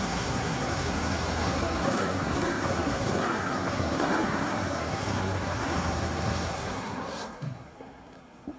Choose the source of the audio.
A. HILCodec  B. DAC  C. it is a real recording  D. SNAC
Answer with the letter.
D